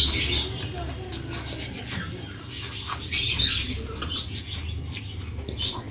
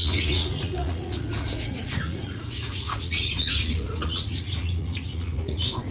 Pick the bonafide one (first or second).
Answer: first